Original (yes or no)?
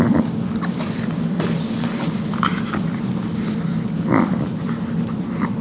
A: no